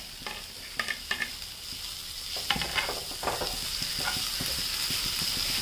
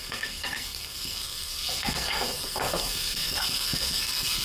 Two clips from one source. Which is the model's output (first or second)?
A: second